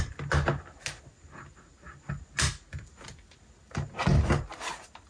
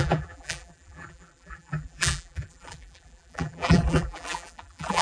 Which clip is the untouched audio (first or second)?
first